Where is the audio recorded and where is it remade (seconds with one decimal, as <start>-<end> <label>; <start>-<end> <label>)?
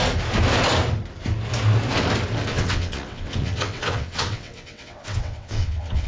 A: 0.0-2.5 recorded; 2.5-6.1 remade